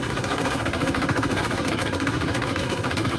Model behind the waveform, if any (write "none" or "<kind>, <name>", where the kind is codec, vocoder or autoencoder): codec, SNAC